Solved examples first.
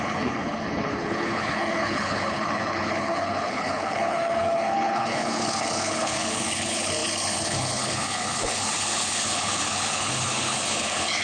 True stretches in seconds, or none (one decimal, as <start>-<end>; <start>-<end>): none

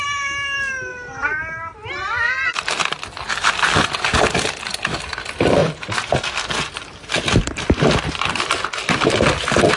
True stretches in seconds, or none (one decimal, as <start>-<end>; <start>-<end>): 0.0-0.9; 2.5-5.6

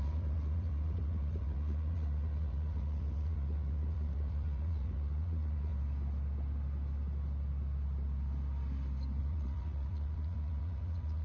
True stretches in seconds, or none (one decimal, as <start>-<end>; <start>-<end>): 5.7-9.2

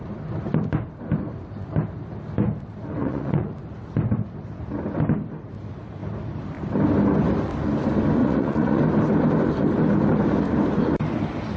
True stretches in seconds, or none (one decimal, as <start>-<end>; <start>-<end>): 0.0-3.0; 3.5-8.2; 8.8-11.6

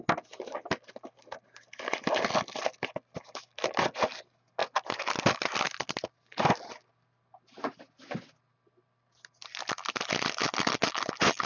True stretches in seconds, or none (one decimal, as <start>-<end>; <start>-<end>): 0.0-11.5

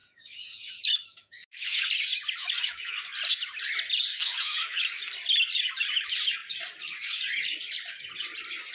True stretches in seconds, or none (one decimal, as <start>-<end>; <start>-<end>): 1.9-2.4; 3.0-4.1; 5.0-8.7

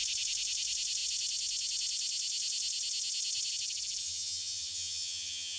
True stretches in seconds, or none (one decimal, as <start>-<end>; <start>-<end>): 0.0-4.0

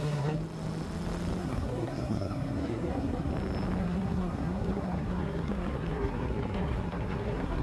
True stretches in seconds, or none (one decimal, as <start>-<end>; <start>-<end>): 0.4-1.4; 3.3-3.8